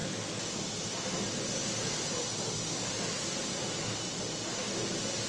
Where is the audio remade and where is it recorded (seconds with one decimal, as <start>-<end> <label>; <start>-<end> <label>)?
0.0-5.3 recorded